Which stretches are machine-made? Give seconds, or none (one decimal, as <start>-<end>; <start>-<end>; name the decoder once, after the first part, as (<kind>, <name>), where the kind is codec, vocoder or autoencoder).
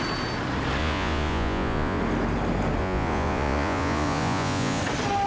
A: 0.8-2.0 (vocoder, Vocos); 2.8-4.8